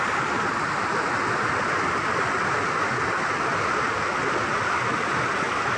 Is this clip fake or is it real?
real